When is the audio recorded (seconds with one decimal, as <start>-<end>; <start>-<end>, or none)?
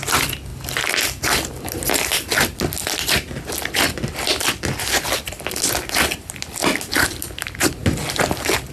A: 0.0-8.7